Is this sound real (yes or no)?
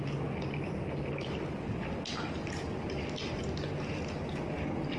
yes